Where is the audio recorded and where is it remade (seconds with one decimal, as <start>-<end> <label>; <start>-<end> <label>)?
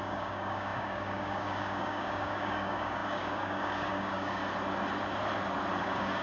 0.0-4.4 remade; 4.4-5.8 recorded; 5.8-6.2 remade